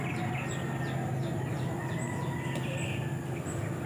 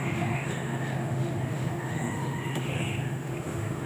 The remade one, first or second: second